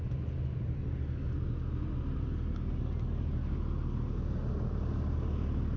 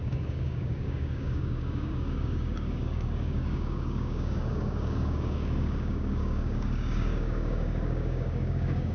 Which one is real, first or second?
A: first